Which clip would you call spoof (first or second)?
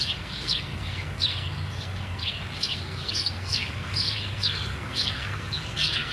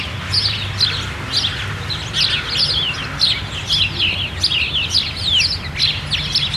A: first